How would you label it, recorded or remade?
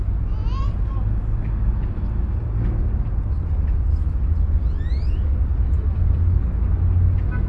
recorded